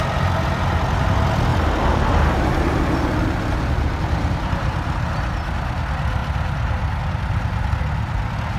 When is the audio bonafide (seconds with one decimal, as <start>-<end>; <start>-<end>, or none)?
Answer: 0.0-1.5; 4.9-8.6